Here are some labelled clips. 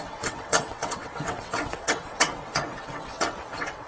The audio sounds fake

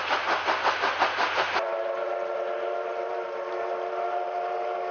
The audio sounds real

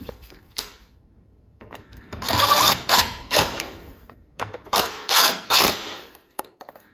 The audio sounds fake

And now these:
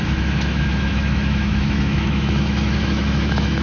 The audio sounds fake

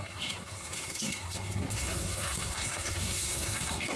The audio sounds fake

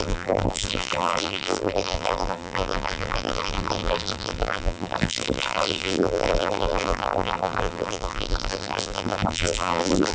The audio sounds fake